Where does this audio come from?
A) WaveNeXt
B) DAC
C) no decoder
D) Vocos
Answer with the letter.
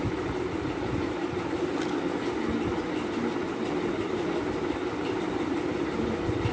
C